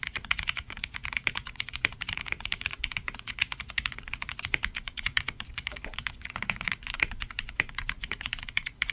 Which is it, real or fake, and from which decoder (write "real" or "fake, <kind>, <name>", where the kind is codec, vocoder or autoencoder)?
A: fake, vocoder, Vocos